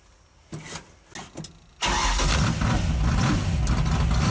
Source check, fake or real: real